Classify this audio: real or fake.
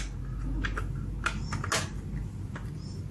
real